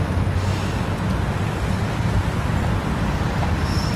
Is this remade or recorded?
recorded